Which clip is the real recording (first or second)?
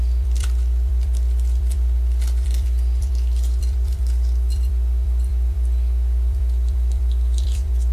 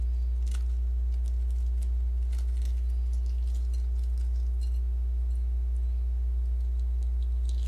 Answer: second